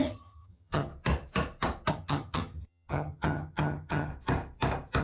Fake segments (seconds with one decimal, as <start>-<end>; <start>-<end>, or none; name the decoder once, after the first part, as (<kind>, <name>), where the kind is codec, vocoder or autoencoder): 0.0-0.9 (vocoder, HiFi-GAN); 1.9-4.1